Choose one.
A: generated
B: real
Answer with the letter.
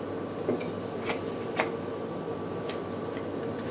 B